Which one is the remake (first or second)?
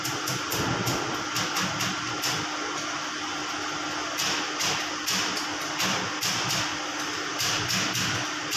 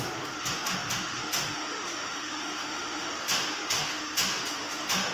second